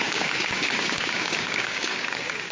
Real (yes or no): no